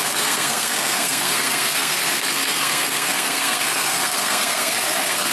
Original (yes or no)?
no